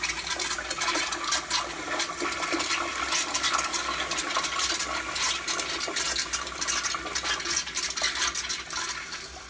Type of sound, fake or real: real